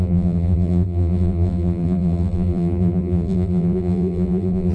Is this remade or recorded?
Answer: remade